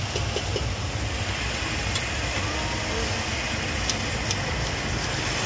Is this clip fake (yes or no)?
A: no